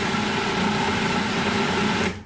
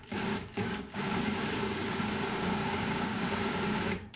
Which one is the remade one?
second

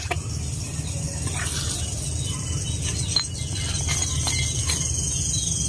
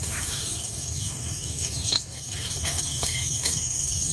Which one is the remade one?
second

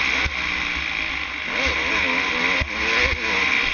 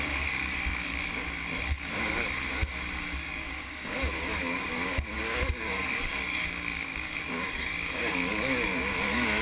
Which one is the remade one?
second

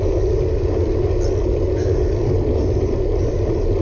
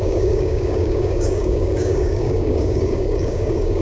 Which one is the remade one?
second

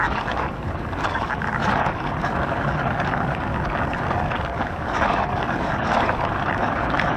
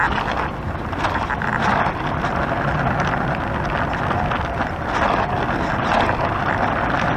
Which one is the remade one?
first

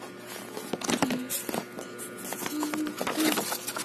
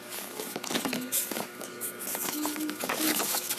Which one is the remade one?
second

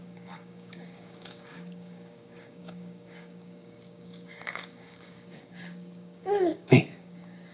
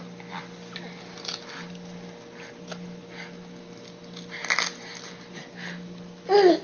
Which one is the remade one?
first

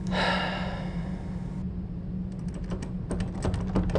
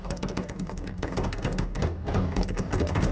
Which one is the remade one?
second